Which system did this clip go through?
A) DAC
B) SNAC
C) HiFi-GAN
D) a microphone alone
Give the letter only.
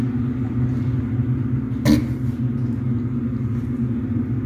D